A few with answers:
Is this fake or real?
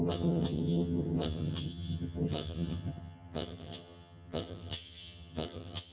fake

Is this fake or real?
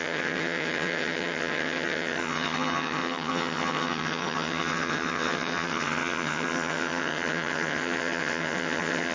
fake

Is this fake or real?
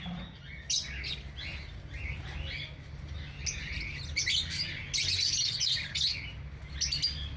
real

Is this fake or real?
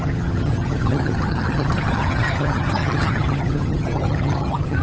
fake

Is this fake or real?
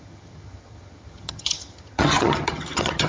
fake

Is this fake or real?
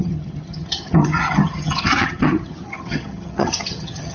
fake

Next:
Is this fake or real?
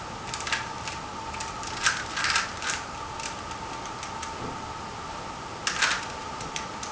real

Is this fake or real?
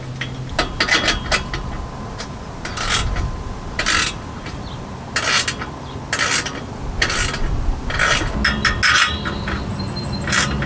real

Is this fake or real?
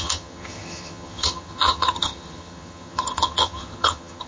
fake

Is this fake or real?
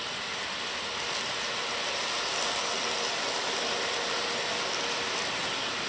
real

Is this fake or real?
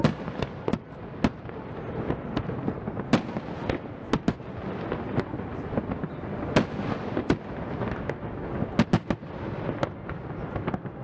real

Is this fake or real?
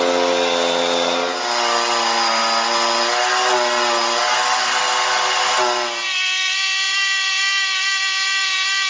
real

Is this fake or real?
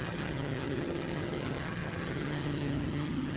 fake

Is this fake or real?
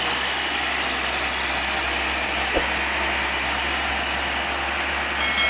real